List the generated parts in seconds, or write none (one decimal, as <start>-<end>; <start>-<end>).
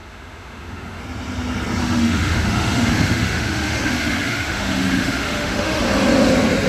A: 0.0-1.0; 1.8-5.8